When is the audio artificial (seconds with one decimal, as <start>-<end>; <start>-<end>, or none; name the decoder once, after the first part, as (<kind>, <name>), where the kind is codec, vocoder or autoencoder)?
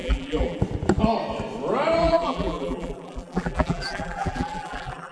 0.0-0.6 (vocoder, BigVGAN v2); 2.0-5.1